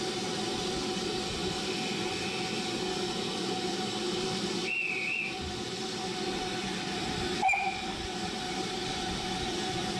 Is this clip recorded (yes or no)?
no